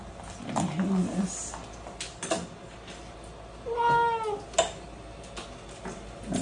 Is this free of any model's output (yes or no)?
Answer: yes